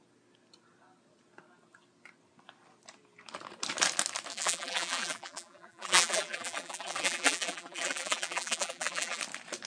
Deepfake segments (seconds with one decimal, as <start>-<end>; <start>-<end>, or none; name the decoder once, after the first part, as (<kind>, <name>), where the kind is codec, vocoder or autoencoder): 4.3-9.2 (vocoder, BigVGAN v2)